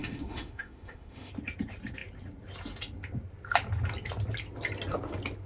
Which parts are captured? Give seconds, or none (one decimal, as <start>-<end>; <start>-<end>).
1.3-5.5